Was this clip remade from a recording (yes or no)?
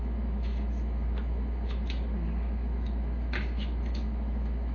yes